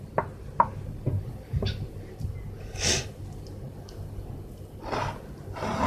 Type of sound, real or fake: real